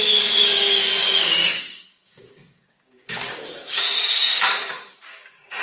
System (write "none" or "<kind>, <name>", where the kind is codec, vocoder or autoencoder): codec, DAC